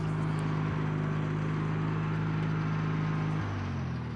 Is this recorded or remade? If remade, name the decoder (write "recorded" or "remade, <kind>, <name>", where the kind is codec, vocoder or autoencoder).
recorded